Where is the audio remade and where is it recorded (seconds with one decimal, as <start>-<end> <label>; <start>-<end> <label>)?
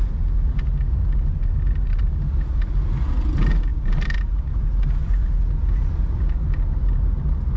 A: 0.0-5.0 recorded; 5.0-5.9 remade; 5.9-7.6 recorded